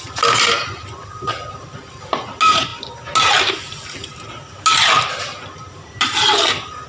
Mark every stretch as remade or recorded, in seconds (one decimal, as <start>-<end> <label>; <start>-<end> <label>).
0.0-6.9 recorded